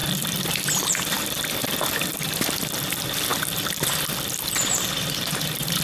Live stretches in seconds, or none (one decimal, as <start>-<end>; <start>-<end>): 1.5-3.3; 4.4-5.8